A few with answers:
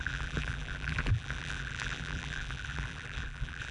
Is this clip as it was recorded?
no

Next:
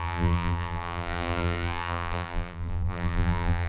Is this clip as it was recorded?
no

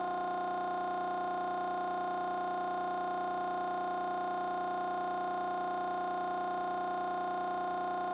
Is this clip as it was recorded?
yes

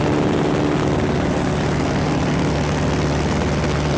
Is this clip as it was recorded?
yes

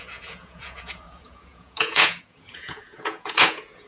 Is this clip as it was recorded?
no